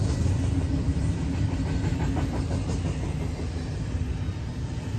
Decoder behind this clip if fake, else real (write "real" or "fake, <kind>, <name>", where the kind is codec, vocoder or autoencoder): real